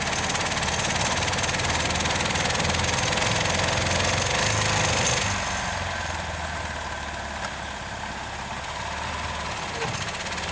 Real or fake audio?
real